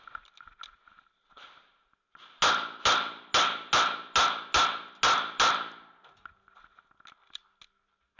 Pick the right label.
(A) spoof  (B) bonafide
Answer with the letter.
B